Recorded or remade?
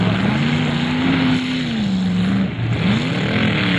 recorded